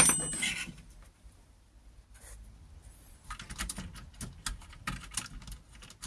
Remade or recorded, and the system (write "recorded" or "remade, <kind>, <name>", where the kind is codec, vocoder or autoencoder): recorded